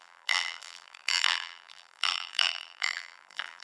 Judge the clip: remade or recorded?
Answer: remade